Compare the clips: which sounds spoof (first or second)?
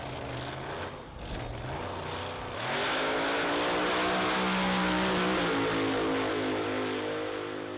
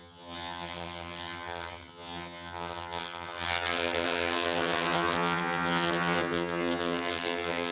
second